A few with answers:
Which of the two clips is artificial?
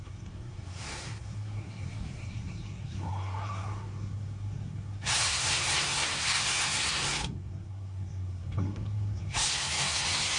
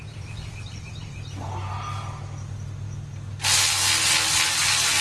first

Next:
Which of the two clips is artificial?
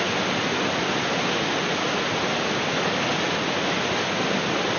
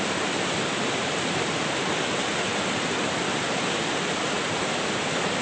second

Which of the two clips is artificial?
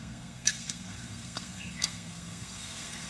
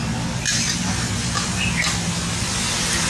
first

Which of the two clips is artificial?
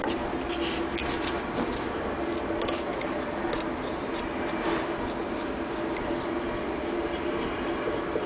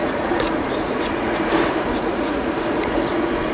second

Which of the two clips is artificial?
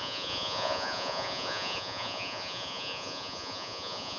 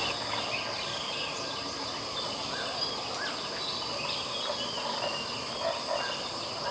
first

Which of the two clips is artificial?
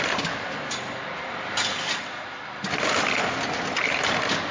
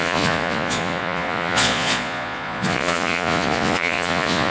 second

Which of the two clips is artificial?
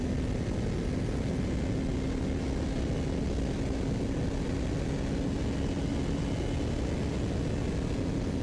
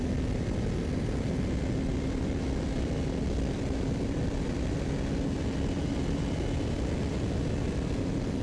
second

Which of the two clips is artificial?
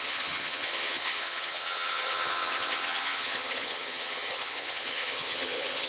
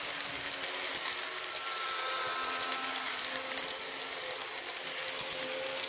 first